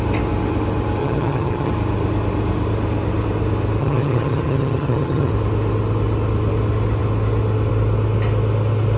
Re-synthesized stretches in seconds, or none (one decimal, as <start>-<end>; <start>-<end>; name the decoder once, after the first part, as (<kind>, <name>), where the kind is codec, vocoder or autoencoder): 1.0-1.7 (vocoder, HiFi-GAN); 3.8-5.3